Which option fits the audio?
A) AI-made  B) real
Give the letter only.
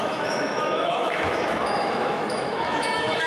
A